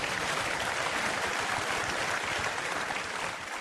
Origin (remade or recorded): remade